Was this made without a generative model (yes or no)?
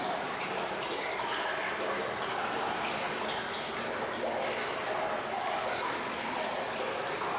yes